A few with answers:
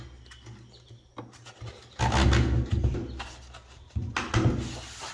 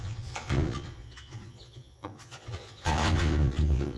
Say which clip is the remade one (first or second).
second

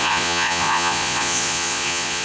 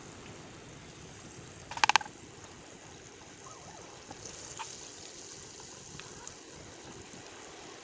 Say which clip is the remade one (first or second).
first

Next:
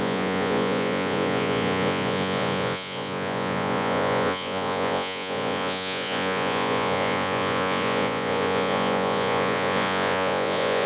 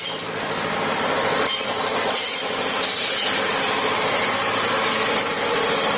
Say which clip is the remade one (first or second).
first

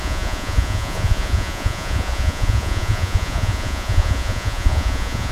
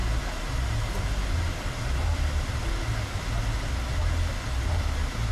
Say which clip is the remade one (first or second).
first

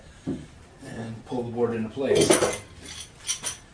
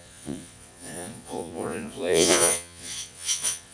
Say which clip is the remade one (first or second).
second